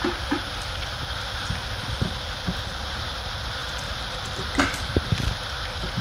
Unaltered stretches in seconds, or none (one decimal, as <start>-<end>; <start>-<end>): 0.0-3.6; 5.3-6.0